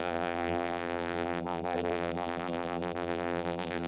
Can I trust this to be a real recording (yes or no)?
no